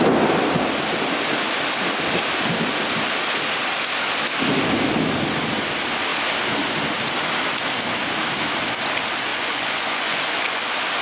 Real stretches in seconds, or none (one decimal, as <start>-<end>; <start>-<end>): 0.0-9.3; 10.6-11.0